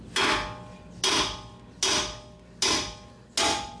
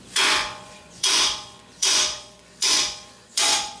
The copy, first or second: second